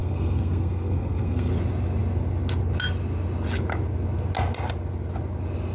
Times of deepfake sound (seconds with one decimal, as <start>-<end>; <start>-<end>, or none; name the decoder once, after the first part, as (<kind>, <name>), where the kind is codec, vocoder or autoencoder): 0.0-1.5 (codec, SNAC)